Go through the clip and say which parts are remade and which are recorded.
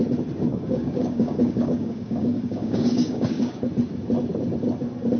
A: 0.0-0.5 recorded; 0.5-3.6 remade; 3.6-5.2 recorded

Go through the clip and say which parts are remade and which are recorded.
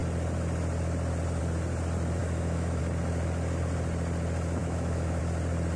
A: 0.0-2.2 recorded; 2.2-2.8 remade; 2.8-4.6 recorded; 4.6-5.2 remade; 5.2-5.8 recorded